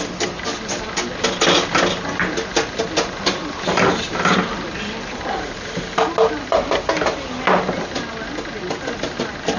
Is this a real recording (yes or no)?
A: yes